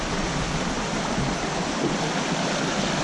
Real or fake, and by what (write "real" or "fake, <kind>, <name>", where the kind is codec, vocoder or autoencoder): fake, vocoder, BigVGAN v2